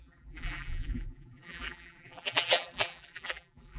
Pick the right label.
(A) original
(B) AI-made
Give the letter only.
B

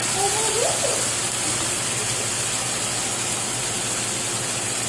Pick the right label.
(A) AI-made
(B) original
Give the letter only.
B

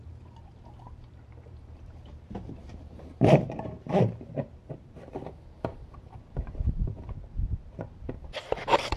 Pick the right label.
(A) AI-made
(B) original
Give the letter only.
A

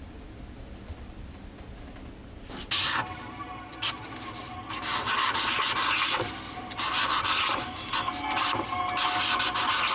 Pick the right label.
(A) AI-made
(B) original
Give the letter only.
B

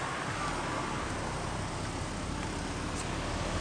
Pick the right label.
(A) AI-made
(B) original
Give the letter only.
B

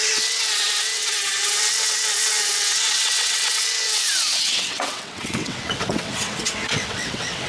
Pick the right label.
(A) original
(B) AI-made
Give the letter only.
B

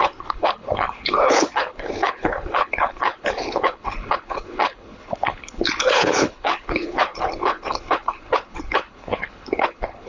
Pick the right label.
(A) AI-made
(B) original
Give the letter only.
A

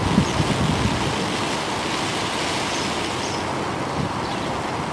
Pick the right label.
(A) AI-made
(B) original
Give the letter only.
B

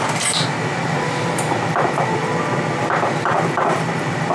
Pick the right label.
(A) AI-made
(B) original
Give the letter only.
B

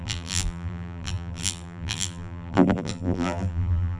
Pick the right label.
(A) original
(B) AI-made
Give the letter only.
B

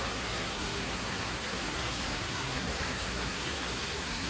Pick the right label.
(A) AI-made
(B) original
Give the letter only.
A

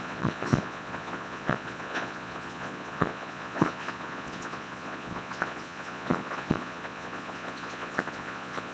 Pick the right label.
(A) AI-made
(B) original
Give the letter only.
A